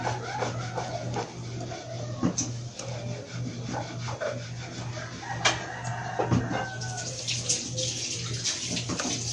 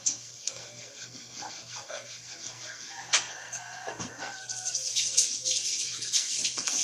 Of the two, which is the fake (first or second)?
second